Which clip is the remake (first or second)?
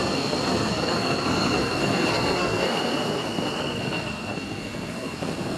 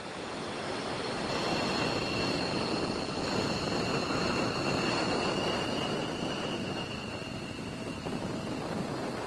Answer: first